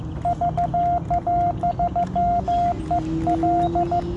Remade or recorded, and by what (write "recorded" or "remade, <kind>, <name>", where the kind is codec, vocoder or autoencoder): recorded